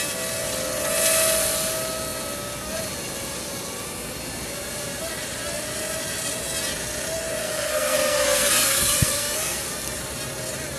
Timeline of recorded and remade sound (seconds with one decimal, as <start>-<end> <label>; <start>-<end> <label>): 0.0-7.4 recorded; 7.4-9.7 remade; 9.7-10.8 recorded